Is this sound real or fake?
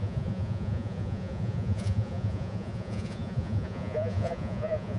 fake